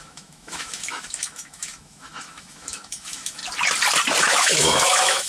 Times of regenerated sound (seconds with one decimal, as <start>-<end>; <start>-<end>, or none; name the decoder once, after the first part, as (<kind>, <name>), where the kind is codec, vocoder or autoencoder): 0.0-3.4 (autoencoder, DAC-VAE); 4.2-5.3